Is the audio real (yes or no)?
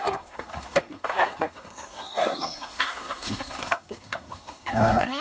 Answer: no